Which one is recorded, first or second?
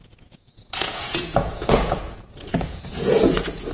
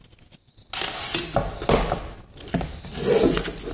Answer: second